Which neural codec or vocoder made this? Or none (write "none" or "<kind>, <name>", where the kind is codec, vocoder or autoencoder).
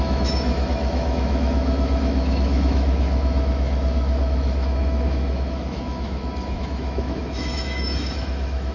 autoencoder, DAC-VAE